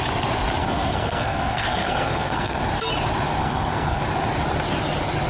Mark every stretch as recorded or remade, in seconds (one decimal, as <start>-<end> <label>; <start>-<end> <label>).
0.0-0.6 recorded; 0.6-2.6 remade; 2.6-3.4 recorded; 3.4-4.0 remade; 4.0-5.3 recorded